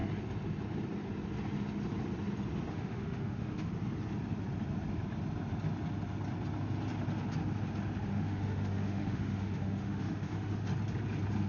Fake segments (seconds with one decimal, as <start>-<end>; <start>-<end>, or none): 2.7-3.7; 8.1-10.7